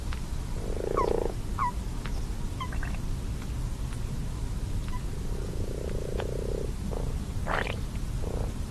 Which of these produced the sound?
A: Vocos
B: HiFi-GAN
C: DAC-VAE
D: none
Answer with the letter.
D